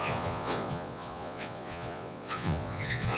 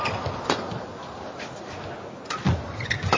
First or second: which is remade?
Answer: first